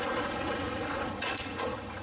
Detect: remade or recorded remade